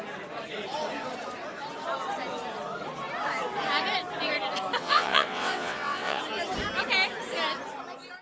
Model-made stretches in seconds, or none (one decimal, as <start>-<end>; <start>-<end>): 4.8-6.2